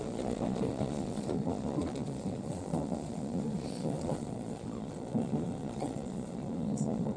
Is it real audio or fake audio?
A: fake